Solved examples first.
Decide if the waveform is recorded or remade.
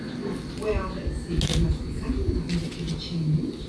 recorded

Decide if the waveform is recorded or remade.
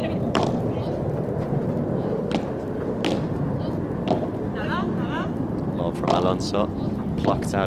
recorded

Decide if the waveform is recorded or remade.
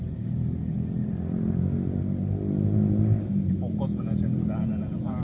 recorded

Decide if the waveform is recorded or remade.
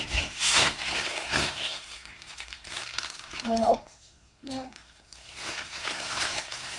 remade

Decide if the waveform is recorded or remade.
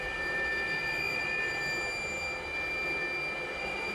recorded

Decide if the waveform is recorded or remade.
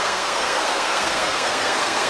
remade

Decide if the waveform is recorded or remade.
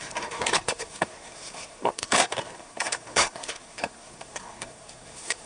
remade